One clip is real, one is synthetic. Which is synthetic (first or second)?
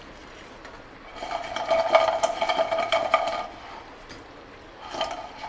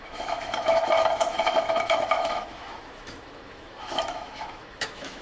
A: second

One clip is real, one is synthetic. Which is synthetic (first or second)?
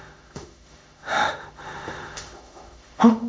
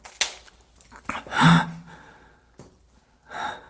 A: first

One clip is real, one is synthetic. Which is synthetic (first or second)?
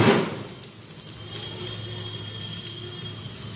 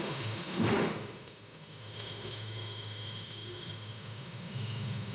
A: second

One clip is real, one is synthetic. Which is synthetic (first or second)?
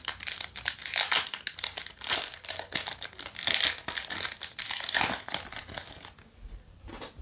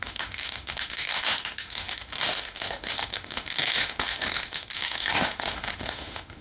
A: second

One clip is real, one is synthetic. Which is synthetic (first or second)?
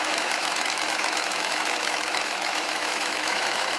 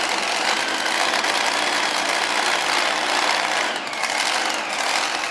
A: first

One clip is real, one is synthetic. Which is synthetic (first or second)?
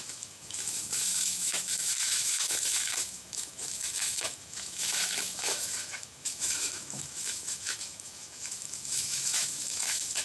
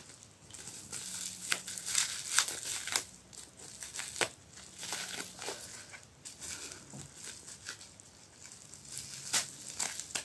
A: first